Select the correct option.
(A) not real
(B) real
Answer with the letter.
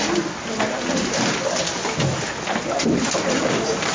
B